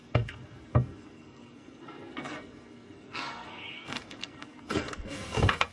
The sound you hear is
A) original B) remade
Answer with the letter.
B